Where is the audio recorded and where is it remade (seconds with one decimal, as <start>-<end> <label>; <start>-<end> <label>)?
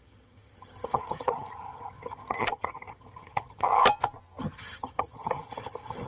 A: 0.0-3.8 remade; 3.8-4.4 recorded; 4.4-6.1 remade